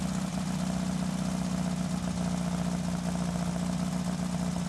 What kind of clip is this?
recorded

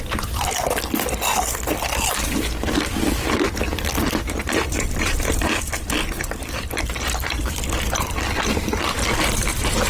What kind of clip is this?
remade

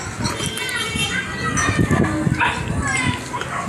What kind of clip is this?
recorded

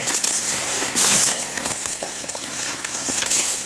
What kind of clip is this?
remade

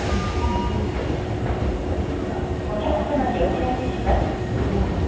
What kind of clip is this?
recorded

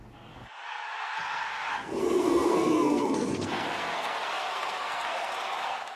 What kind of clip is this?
remade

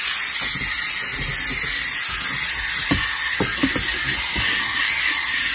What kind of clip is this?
recorded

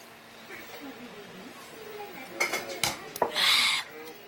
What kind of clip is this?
recorded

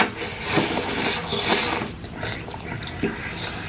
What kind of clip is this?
recorded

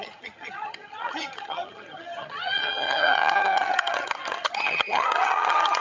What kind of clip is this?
remade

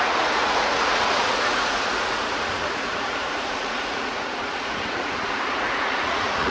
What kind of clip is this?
remade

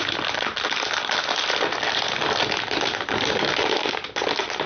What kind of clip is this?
recorded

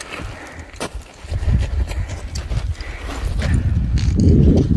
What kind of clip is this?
recorded